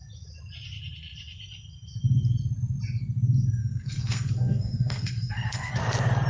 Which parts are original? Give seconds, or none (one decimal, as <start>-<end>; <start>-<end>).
0.0-3.6; 5.7-6.3